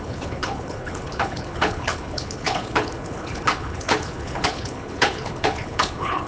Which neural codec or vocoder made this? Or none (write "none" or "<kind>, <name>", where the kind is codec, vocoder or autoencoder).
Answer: codec, HILCodec